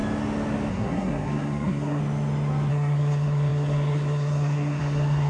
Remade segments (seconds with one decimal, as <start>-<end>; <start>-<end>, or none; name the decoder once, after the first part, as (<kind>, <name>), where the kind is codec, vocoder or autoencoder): 0.7-2.0 (codec, SNAC); 2.7-5.3